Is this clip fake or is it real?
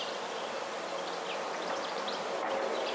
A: real